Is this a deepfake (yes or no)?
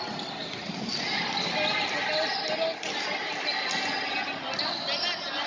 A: no